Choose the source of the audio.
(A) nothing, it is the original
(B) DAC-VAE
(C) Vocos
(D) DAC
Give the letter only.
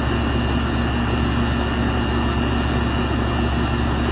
A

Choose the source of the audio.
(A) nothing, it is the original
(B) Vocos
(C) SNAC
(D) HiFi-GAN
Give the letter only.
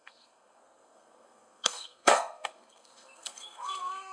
C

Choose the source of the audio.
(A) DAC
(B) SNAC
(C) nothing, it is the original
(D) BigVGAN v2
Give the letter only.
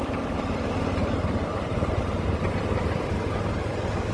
C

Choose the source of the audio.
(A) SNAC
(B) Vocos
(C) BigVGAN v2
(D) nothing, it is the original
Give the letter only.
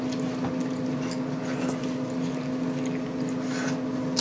D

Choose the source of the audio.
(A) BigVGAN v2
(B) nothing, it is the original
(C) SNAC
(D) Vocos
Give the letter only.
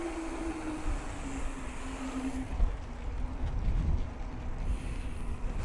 B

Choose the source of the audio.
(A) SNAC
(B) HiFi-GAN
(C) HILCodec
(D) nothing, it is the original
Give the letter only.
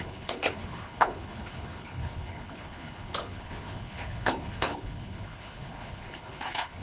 C